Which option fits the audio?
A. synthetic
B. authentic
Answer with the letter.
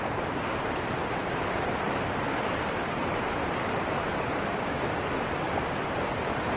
B